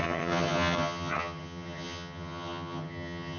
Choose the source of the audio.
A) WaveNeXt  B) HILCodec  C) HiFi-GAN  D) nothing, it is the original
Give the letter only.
C